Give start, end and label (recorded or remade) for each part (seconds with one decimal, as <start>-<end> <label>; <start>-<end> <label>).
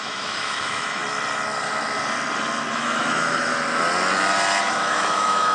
0.0-1.0 remade; 1.0-2.7 recorded; 2.7-3.5 remade; 3.5-4.6 recorded; 4.6-5.5 remade